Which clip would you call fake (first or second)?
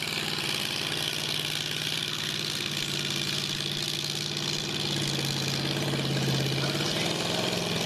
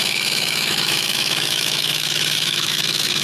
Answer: second